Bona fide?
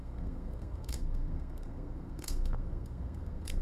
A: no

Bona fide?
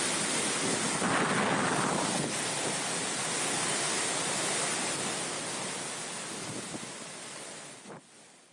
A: yes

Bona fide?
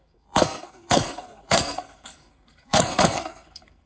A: no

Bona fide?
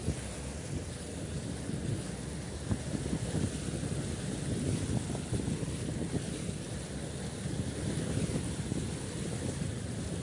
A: yes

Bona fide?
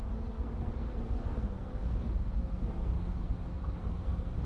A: no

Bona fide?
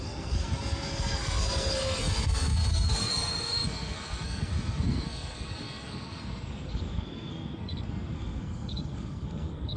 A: no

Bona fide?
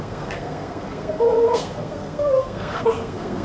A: no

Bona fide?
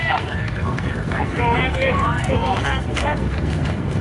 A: no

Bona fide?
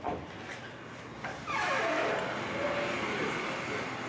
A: yes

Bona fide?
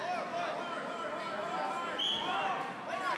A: yes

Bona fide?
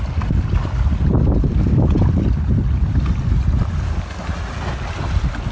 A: yes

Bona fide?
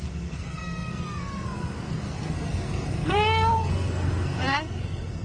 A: no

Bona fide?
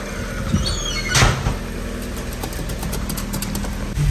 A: yes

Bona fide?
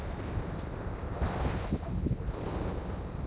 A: yes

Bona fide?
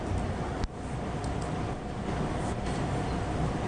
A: yes